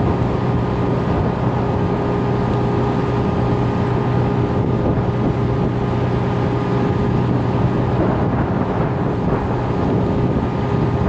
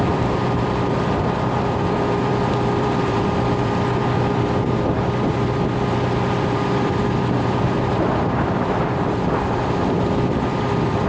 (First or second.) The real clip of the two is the first